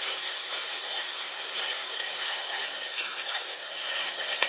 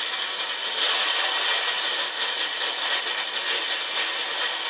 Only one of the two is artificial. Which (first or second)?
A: first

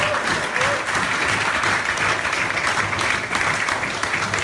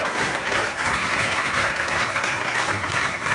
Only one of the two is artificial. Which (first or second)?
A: second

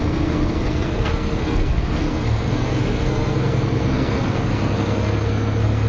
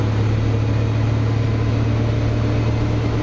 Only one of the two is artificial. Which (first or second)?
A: first